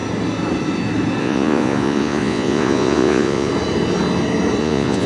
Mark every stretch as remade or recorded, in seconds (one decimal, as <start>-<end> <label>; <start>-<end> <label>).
0.0-1.2 recorded; 1.2-3.5 remade; 3.5-4.6 recorded; 4.6-5.1 remade